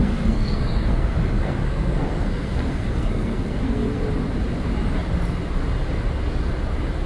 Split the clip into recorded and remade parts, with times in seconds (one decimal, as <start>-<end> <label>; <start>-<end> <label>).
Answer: 0.0-4.0 remade; 4.0-7.1 recorded